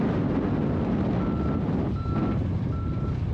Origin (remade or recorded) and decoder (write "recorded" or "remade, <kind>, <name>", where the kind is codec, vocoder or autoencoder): recorded